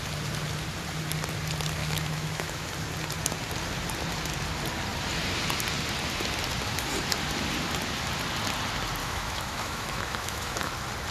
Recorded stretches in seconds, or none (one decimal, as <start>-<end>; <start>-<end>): 0.0-1.8; 2.7-9.0; 10.7-11.1